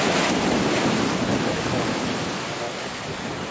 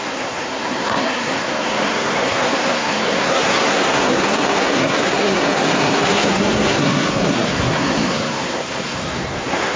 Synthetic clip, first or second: second